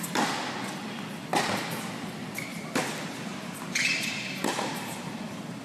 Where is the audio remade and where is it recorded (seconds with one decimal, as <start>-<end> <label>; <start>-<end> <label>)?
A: 0.0-5.6 recorded